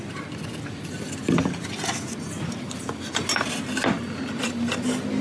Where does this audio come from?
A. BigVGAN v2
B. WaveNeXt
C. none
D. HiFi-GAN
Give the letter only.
C